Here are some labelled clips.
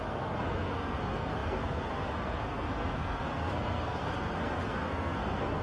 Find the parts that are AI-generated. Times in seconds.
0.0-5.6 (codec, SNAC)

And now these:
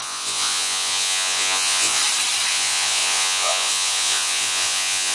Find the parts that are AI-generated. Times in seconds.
0.0-2.0 (vocoder, Vocos); 2.5-5.1

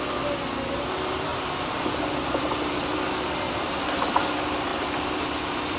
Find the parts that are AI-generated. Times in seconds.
0.0-5.8 (vocoder, BigVGAN v2)

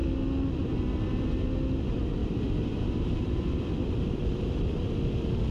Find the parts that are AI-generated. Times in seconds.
2.2-5.5 (vocoder, BigVGAN v2)

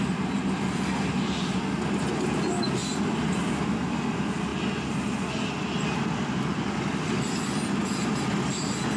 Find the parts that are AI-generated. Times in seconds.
none

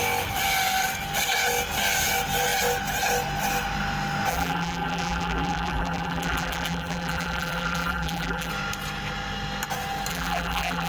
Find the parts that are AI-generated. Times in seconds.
4.3-8.5 (vocoder, BigVGAN v2); 10.1-10.9